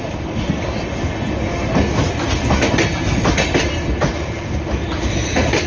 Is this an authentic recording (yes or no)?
yes